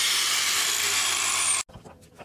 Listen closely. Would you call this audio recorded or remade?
recorded